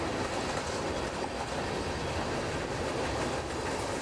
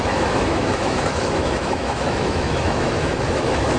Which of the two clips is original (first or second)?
first